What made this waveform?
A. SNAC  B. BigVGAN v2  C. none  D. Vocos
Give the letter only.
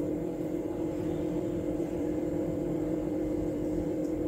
B